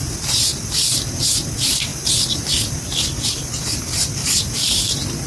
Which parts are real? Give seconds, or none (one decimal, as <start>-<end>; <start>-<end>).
0.0-1.9; 2.5-4.2